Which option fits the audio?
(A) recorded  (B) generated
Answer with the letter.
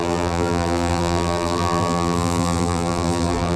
B